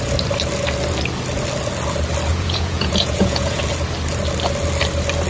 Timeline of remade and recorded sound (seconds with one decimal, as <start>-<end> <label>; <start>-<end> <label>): 0.0-2.3 recorded; 2.3-3.6 remade; 3.6-5.3 recorded